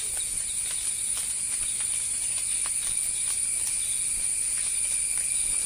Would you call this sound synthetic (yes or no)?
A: no